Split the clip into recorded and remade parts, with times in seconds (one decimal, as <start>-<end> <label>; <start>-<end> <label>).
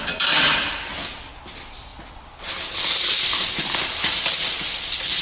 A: 0.0-5.2 recorded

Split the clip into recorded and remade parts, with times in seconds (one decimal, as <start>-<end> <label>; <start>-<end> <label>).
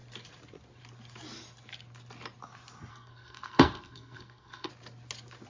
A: 0.0-2.9 recorded; 2.9-4.7 remade; 4.7-5.5 recorded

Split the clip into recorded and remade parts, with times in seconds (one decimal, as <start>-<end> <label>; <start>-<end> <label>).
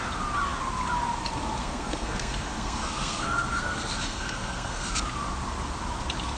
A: 0.0-1.6 recorded; 1.6-4.9 remade; 4.9-6.4 recorded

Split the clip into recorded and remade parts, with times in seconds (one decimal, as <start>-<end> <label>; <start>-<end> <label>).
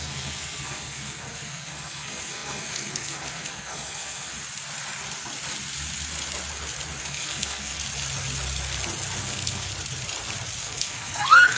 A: 0.0-4.3 remade; 4.3-7.0 recorded; 7.0-7.8 remade; 7.8-9.2 recorded; 9.2-9.7 remade; 9.7-10.6 recorded; 10.6-11.6 remade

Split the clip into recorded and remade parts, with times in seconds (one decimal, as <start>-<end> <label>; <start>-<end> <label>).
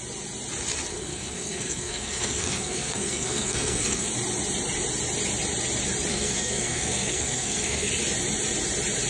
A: 0.0-0.9 recorded; 0.9-4.1 remade; 4.1-6.1 recorded; 6.1-7.9 remade; 7.9-9.1 recorded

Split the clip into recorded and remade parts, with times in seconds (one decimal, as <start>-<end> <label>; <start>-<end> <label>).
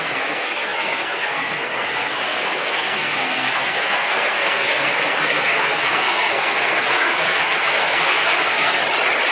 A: 0.0-8.8 remade; 8.8-9.3 recorded